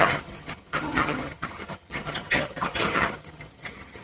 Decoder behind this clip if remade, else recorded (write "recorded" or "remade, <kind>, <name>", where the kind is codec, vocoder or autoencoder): remade, vocoder, HiFi-GAN